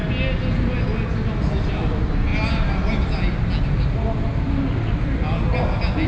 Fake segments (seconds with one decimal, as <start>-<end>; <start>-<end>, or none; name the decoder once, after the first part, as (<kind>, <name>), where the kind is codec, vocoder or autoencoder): none